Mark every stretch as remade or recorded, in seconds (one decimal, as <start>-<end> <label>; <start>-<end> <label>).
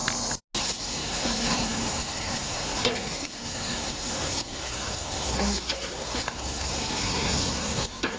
0.0-0.6 recorded; 0.6-8.2 remade